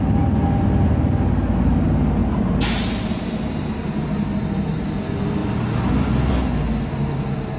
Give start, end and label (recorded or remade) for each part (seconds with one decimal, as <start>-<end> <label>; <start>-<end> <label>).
0.0-7.6 recorded